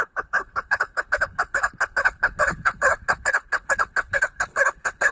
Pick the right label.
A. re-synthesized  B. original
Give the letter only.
A